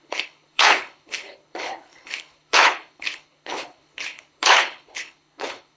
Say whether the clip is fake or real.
fake